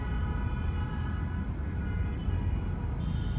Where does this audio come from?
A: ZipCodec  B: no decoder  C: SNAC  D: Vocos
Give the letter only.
B